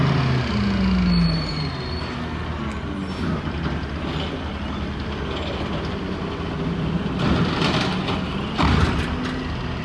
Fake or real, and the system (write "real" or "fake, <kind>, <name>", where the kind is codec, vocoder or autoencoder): real